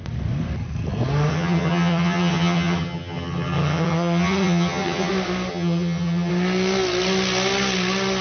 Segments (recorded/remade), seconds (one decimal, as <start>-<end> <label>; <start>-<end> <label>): 0.0-1.3 recorded; 1.3-5.1 remade; 5.1-5.5 recorded; 5.5-6.3 remade; 6.3-8.2 recorded